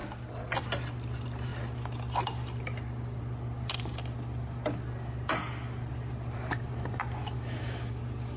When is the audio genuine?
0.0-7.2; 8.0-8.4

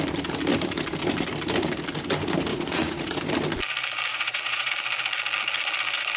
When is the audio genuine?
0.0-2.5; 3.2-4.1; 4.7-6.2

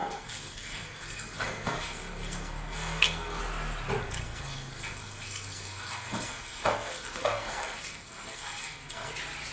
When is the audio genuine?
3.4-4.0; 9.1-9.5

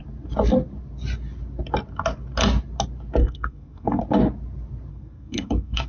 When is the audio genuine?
0.0-3.2; 4.0-4.9

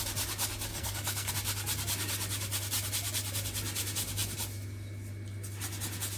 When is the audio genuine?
0.0-0.7; 1.3-6.2